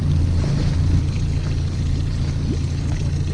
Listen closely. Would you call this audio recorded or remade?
recorded